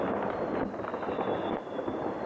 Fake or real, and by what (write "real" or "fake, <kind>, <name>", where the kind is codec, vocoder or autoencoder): real